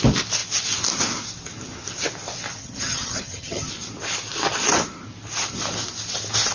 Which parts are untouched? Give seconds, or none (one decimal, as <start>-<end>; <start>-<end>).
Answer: 0.0-2.6; 3.7-6.5